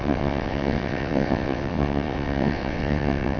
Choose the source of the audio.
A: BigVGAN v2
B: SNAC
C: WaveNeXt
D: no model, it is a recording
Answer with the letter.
C